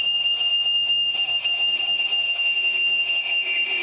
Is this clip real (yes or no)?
no